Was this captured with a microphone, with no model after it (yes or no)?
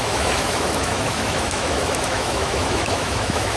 no